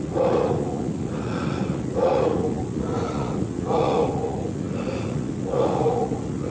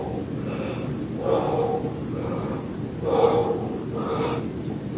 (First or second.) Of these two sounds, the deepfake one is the first